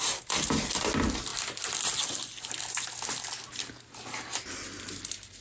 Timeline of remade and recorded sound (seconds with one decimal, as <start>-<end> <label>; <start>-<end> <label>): 0.0-5.4 recorded